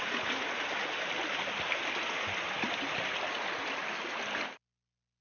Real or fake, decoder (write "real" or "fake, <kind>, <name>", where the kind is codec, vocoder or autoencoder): real